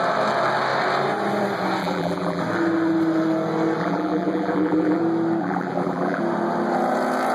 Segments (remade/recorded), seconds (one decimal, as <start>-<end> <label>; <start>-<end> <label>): 0.0-1.8 recorded; 1.8-2.4 remade; 2.4-3.8 recorded; 3.8-5.0 remade; 5.0-5.4 recorded; 5.4-6.2 remade; 6.2-7.3 recorded